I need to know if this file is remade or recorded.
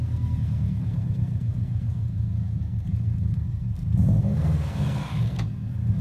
remade